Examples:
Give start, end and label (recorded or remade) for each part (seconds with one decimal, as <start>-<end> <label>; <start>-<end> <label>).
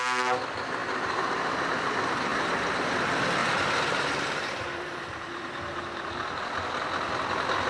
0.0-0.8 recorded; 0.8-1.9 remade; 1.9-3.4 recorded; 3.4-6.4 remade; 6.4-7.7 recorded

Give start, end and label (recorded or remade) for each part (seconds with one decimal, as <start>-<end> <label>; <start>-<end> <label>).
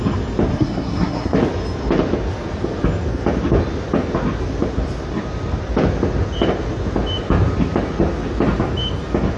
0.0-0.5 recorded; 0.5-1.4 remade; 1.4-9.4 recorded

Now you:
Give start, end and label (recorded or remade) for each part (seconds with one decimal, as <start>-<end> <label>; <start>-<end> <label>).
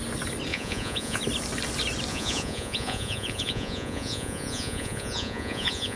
0.0-0.5 recorded; 0.5-1.2 remade; 1.2-2.1 recorded; 2.1-6.0 remade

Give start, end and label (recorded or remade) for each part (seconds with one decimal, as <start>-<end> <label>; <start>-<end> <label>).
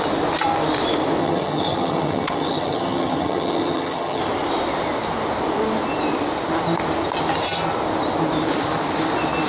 0.0-1.2 recorded; 1.2-4.2 remade; 4.2-9.5 recorded